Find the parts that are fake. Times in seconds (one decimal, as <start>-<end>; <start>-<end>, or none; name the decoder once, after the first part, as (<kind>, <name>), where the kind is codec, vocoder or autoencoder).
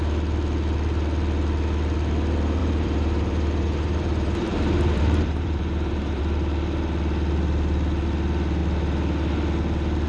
2.6-6.2 (vocoder, BigVGAN v2)